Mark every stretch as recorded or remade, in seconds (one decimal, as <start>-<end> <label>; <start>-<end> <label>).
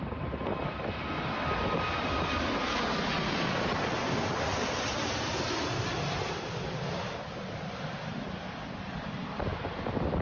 0.0-10.2 recorded